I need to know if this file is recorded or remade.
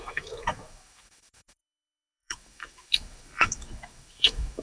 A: remade